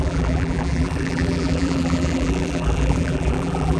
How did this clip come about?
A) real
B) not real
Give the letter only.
B